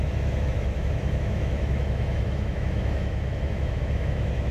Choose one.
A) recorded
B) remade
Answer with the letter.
B